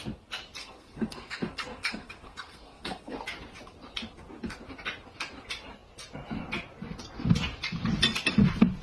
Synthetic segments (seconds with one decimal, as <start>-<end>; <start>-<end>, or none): 0.6-3.2